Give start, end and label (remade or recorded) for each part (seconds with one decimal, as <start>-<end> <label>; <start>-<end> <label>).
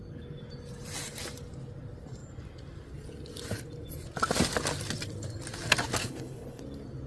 0.0-6.0 recorded; 6.0-6.6 remade; 6.6-7.1 recorded